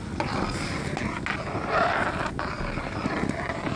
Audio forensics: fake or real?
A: real